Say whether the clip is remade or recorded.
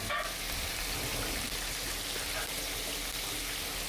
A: recorded